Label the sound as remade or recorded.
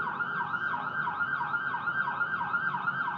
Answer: recorded